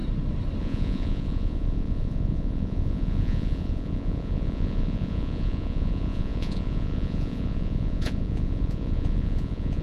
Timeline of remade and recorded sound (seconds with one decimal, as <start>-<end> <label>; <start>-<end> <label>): 0.0-0.6 recorded; 0.6-9.8 remade